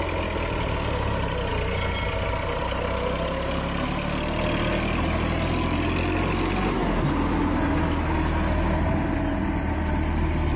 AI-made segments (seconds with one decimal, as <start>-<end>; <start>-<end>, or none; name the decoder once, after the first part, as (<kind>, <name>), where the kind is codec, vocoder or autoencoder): none